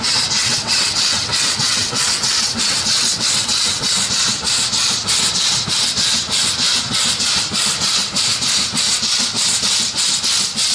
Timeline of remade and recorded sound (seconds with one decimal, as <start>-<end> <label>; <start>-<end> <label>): 0.0-0.4 recorded; 0.4-4.1 remade; 4.1-10.7 recorded